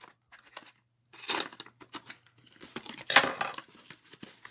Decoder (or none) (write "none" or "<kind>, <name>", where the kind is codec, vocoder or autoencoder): none